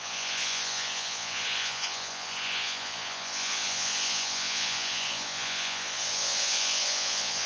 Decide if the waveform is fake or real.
fake